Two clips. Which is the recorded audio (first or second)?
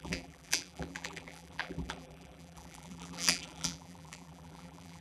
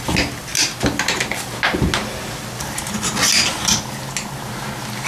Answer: second